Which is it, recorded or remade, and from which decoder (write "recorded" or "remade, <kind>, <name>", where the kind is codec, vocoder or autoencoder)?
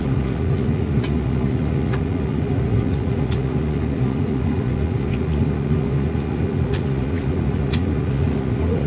remade, vocoder, Vocos